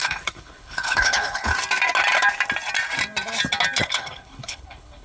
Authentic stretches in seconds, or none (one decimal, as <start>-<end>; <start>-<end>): 1.5-3.8